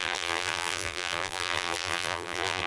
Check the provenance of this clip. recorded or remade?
remade